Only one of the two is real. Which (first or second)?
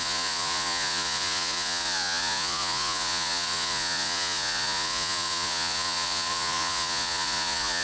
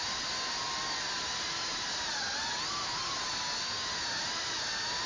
second